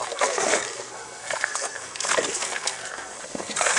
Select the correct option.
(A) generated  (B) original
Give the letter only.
A